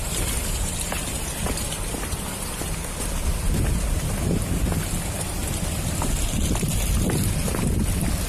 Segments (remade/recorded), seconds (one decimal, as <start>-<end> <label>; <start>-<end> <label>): 0.0-8.3 recorded